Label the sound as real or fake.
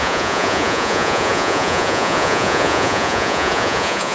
fake